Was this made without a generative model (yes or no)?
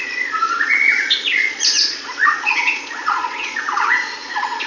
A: no